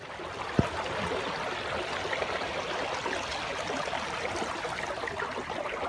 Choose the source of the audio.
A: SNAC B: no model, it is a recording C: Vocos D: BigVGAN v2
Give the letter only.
B